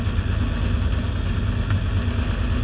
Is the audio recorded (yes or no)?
yes